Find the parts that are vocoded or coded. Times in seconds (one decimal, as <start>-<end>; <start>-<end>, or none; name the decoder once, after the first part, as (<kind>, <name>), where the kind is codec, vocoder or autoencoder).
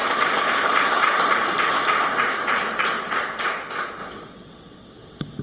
4.0-5.4 (vocoder, WaveNeXt)